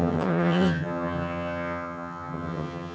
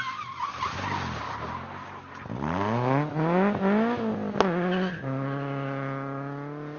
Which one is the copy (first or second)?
first